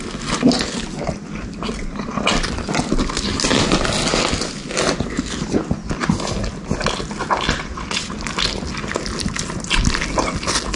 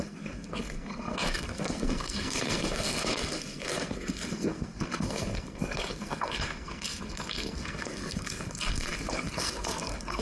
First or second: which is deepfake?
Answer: second